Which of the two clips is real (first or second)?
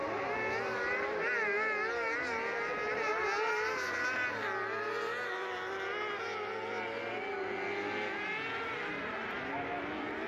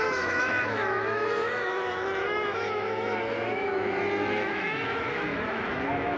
first